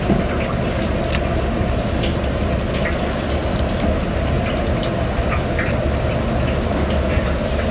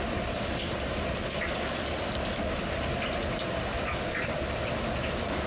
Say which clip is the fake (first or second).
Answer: second